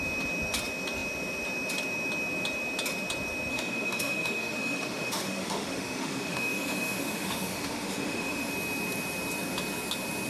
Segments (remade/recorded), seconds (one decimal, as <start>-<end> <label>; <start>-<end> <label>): 0.0-3.5 recorded; 3.5-8.5 remade; 8.5-10.3 recorded